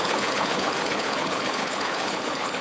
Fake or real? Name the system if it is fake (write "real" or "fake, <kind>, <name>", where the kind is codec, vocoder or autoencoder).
fake, codec, HILCodec